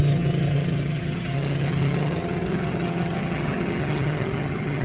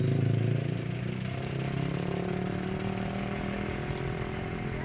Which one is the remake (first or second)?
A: first